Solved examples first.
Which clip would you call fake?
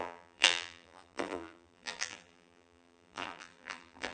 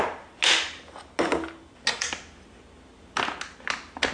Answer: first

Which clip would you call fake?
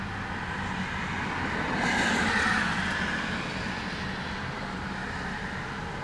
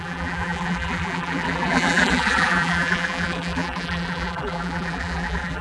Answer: second